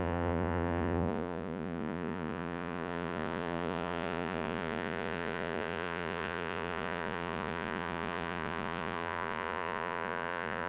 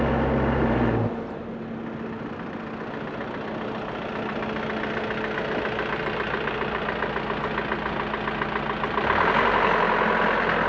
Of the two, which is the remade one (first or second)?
first